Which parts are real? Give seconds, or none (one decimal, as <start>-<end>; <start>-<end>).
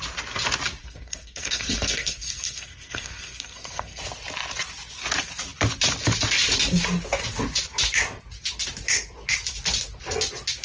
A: 0.0-0.8; 4.0-10.6